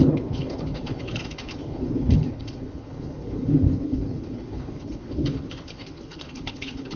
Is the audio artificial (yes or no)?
yes